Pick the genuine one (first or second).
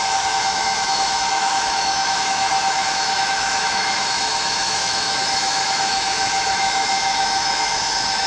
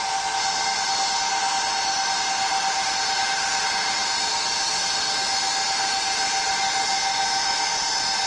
second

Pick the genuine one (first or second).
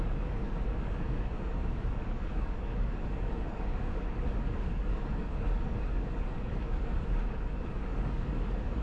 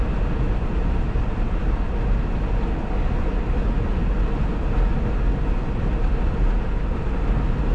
second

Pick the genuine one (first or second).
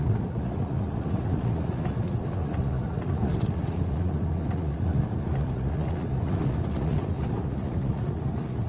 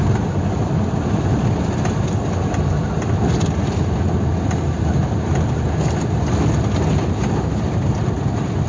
second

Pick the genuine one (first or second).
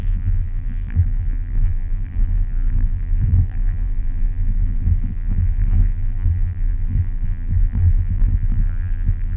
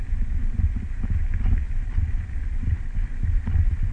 second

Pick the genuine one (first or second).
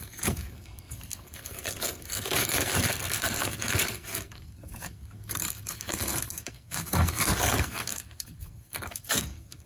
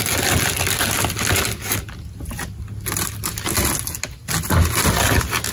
second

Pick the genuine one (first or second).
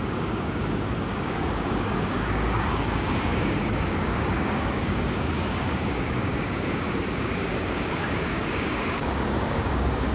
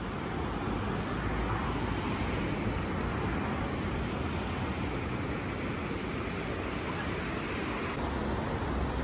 second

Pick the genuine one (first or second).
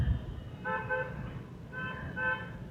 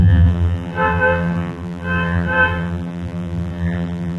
first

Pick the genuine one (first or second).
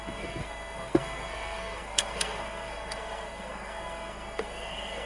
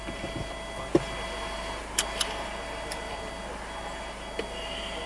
second